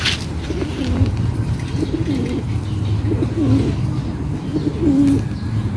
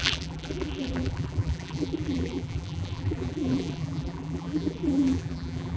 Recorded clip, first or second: first